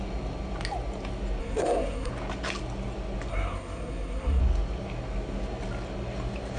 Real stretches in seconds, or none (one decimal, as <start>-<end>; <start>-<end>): 0.0-1.4; 2.1-3.3; 4.4-6.6